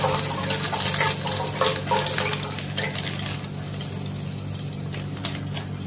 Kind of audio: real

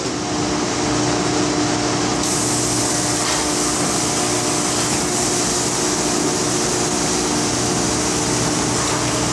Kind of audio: real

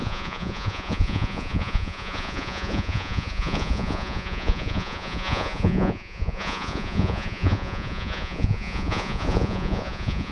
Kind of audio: fake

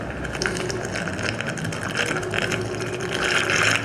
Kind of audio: real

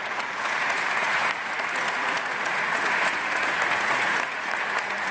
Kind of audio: fake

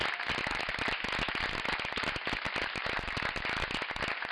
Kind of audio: real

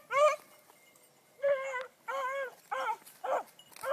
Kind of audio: real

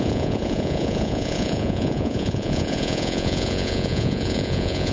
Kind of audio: fake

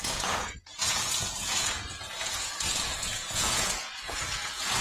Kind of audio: fake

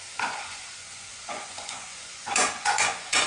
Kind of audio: fake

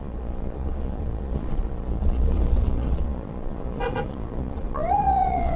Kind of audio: fake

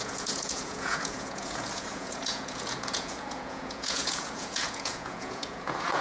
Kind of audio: fake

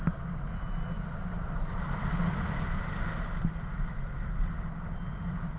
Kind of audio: real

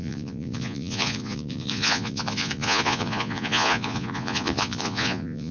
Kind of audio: fake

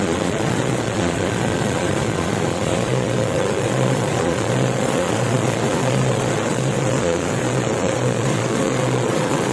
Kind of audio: fake